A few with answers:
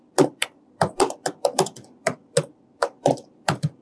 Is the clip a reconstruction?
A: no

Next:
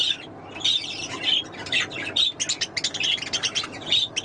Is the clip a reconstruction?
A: no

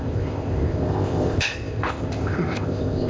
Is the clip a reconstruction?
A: yes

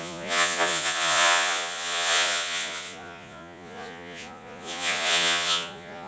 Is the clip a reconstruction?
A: yes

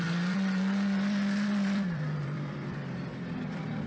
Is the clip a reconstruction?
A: yes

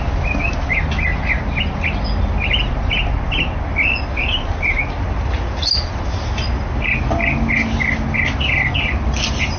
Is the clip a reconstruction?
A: no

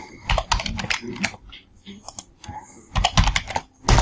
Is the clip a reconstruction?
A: no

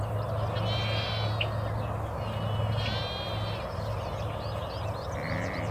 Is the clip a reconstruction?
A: no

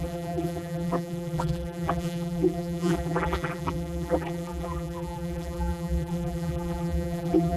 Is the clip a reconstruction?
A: yes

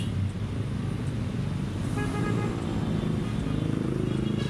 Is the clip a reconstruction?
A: no